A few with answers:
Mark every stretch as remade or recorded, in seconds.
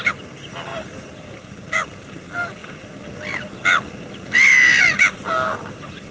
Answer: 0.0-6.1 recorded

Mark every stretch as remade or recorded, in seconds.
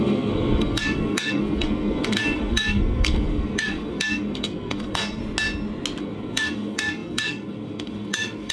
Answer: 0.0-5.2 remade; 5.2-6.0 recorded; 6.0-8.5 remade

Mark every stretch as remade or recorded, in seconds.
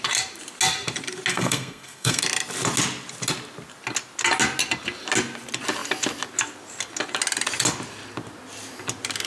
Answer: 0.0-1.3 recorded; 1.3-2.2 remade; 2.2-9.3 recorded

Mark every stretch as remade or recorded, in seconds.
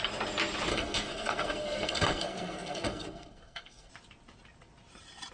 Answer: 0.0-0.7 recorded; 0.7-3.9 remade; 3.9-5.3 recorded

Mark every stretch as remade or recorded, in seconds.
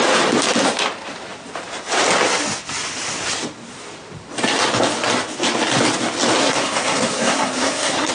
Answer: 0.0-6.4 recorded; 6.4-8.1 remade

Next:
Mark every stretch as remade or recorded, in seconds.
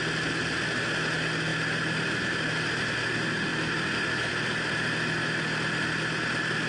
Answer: 0.0-6.7 recorded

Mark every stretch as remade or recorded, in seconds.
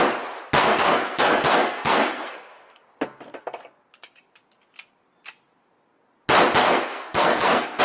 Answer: 0.0-0.6 recorded; 0.6-2.8 remade; 2.8-6.6 recorded; 6.6-7.8 remade